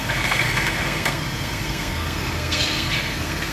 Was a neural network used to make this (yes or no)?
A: yes